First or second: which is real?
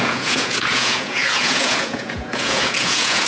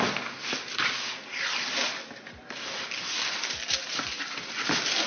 second